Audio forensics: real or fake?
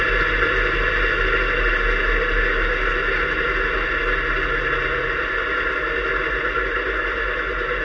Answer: real